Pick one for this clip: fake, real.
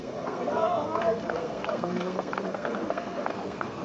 fake